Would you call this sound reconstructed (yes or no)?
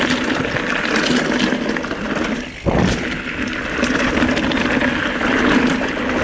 no